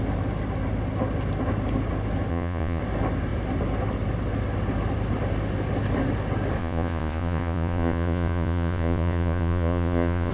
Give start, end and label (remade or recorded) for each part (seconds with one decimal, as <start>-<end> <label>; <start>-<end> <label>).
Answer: 0.0-2.3 recorded; 2.3-2.8 remade; 2.8-6.6 recorded; 6.6-10.3 remade